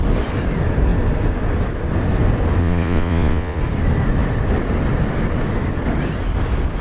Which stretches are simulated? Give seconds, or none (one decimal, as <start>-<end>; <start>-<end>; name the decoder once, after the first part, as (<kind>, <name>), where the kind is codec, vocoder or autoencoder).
2.6-3.6 (vocoder, Vocos)